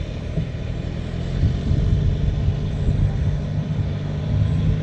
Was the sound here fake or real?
real